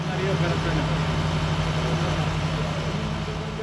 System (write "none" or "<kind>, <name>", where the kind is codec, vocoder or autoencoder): none